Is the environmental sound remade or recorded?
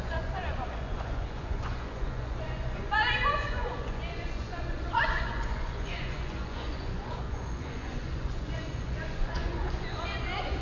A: remade